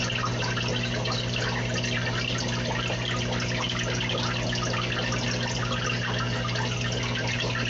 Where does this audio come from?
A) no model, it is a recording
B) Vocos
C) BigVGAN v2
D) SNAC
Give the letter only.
A